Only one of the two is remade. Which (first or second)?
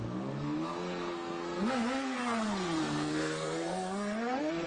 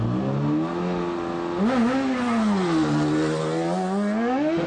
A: first